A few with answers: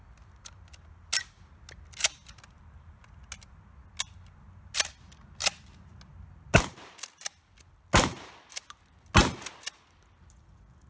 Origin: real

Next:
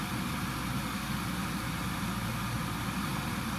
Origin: real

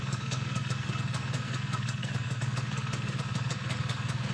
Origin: fake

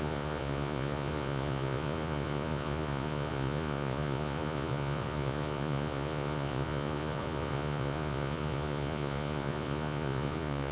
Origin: fake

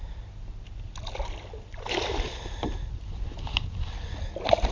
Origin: real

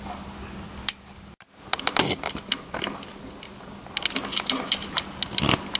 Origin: real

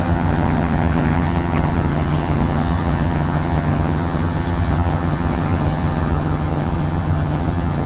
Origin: fake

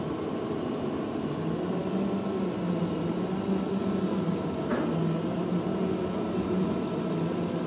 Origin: real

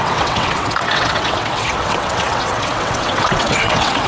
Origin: fake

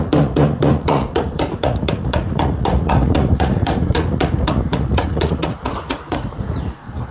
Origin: fake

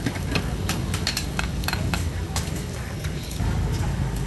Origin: fake